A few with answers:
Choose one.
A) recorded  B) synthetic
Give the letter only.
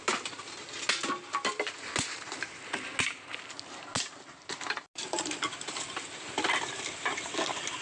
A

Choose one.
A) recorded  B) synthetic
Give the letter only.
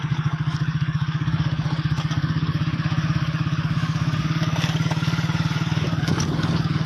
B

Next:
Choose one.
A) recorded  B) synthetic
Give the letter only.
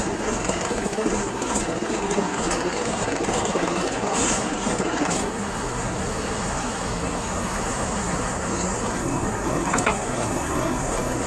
B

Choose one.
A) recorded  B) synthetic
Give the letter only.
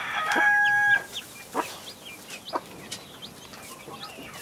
A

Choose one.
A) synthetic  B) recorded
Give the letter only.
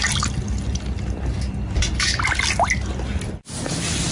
B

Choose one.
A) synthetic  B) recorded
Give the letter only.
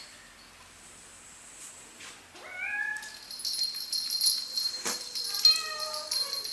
B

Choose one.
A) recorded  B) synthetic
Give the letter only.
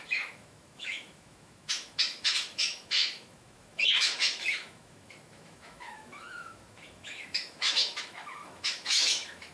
B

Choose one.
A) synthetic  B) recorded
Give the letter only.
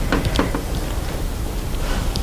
B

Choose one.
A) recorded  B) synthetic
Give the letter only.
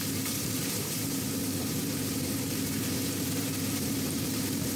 B